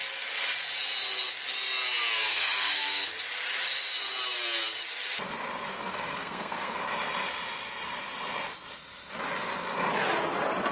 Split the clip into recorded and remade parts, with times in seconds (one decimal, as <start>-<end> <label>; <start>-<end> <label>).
0.0-2.3 recorded; 2.3-3.1 remade; 3.1-5.7 recorded; 5.7-6.8 remade; 6.8-10.7 recorded

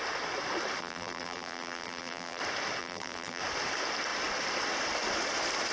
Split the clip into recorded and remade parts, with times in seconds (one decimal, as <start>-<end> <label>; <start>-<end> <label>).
0.0-0.8 recorded; 0.8-2.4 remade; 2.4-2.8 recorded; 2.8-3.4 remade; 3.4-5.7 recorded

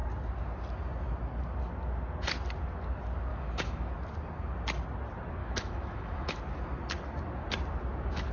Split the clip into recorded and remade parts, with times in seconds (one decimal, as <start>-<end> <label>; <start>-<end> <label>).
0.0-3.3 recorded; 3.3-3.9 remade; 3.9-5.4 recorded; 5.4-6.4 remade; 6.4-8.3 recorded